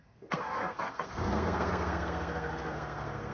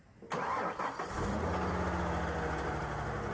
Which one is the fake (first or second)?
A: first